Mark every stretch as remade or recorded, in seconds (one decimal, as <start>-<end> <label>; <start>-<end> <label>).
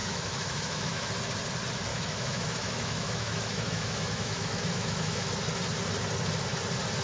0.0-1.1 remade; 1.1-1.9 recorded; 1.9-5.3 remade; 5.3-7.0 recorded